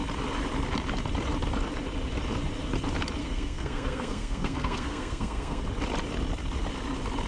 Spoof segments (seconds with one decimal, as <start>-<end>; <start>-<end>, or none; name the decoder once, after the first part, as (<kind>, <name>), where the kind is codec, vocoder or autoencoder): 3.2-5.6 (codec, SNAC)